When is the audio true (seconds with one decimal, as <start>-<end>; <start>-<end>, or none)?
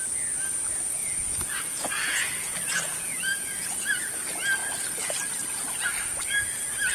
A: 0.0-1.0; 4.0-6.9